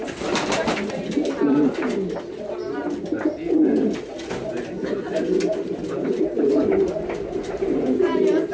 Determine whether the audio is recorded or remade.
recorded